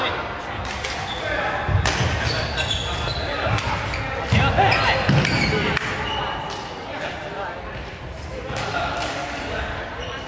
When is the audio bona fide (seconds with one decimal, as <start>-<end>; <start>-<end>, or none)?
0.0-8.3; 9.9-10.3